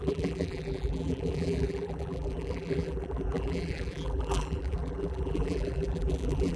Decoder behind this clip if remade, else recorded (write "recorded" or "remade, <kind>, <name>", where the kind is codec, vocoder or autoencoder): remade, vocoder, BigVGAN v2